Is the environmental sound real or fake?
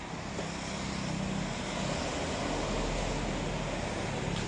real